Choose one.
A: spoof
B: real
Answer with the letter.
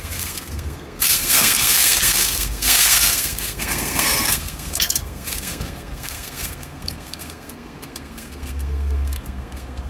A